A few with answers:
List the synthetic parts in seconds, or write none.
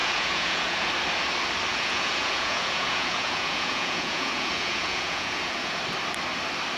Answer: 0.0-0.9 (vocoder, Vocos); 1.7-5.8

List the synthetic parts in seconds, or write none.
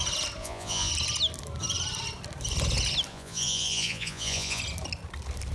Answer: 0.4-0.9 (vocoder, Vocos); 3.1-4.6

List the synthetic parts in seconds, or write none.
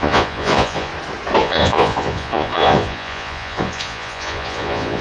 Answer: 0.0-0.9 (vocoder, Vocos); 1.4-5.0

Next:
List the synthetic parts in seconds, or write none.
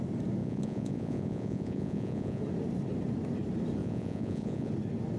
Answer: 0.4-2.4 (vocoder, Vocos); 3.8-4.7